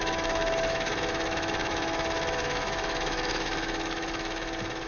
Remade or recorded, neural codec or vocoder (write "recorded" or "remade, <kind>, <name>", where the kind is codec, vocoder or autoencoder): remade, autoencoder, DAC-VAE